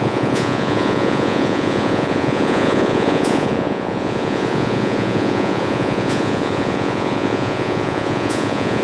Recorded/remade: remade